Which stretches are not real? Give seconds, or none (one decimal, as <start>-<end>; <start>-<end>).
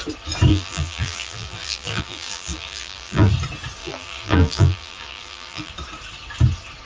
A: 0.5-3.3; 3.8-5.7